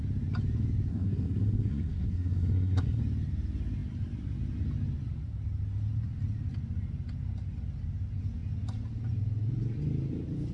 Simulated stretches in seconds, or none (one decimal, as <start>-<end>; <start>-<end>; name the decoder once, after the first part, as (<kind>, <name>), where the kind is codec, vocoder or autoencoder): 0.9-3.0 (codec, SNAC)